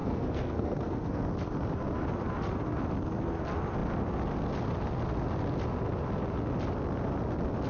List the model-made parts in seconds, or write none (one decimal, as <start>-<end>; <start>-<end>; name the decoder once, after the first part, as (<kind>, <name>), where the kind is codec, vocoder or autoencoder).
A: 0.0-1.2 (codec, SNAC)